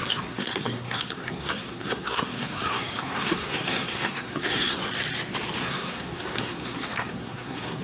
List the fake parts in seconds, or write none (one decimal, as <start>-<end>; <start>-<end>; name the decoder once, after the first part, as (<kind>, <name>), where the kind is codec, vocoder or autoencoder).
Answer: 0.0-4.8 (codec, SNAC); 5.6-7.8